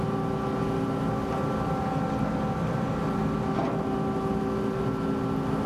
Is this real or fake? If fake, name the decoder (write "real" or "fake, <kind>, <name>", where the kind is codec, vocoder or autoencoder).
real